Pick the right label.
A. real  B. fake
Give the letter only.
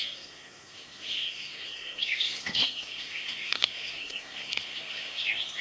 B